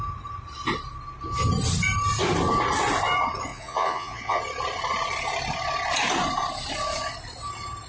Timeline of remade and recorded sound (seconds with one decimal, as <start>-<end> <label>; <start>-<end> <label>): 0.0-3.5 recorded; 3.5-4.4 remade; 4.4-7.9 recorded